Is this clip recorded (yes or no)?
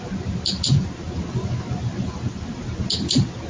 yes